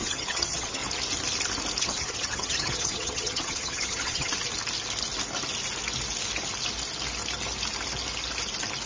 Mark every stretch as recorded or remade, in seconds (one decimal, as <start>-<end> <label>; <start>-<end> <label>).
0.0-0.8 remade; 0.8-1.8 recorded; 1.8-4.3 remade; 4.3-8.9 recorded